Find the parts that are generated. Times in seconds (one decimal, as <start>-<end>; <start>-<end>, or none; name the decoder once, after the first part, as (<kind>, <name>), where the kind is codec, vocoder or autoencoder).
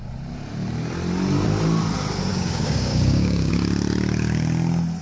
2.3-3.5 (codec, DAC)